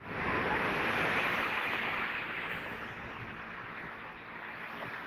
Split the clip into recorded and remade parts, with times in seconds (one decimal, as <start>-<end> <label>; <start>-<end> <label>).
0.0-1.3 recorded; 1.3-2.1 remade; 2.1-5.1 recorded